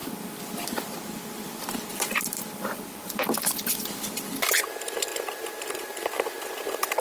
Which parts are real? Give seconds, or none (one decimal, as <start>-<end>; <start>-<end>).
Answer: 0.0-7.0

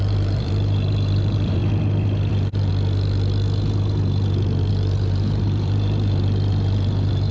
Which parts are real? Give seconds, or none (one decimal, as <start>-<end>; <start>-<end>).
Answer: 1.6-2.3; 2.7-4.7

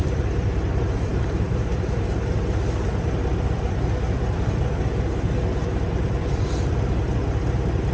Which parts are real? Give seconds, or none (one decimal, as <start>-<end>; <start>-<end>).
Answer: none